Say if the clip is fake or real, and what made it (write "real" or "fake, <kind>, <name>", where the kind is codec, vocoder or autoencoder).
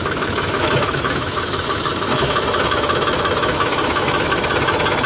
fake, autoencoder, DAC-VAE